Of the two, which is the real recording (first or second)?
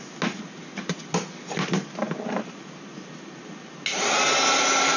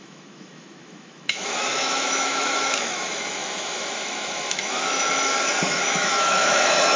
first